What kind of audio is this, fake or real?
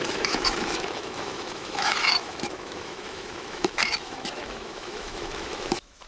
fake